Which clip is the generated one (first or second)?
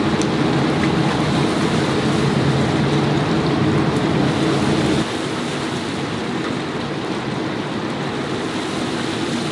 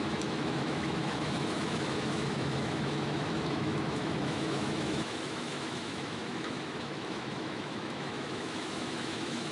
second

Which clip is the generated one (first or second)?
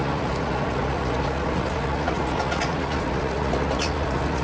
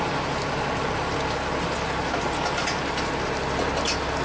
first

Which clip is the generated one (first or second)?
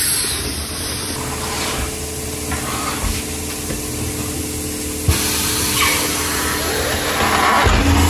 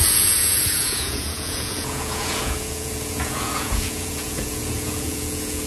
second